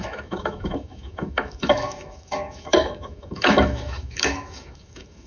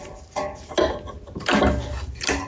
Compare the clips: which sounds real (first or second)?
second